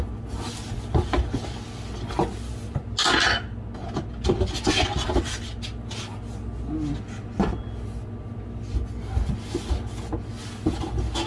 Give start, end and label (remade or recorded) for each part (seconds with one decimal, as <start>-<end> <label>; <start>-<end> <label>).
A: 0.0-11.3 recorded